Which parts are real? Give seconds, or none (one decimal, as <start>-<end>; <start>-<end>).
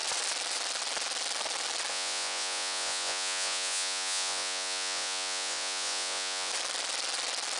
0.0-1.9; 6.5-7.6